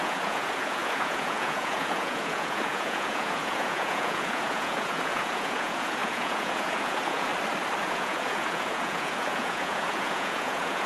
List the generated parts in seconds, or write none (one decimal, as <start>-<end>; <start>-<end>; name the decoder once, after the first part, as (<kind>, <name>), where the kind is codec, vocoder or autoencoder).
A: 0.0-7.3 (vocoder, Vocos); 7.8-10.9